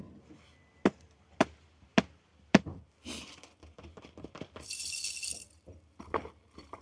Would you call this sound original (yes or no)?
yes